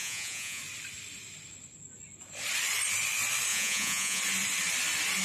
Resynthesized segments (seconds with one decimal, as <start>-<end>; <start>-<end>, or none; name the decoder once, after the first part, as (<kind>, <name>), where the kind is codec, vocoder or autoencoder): 0.0-0.6 (vocoder, Vocos); 3.5-4.2